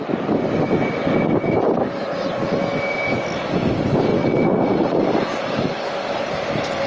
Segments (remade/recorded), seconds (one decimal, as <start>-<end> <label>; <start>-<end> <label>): 0.0-2.0 recorded; 2.0-2.6 remade; 2.6-4.1 recorded; 4.1-5.0 remade; 5.0-6.9 recorded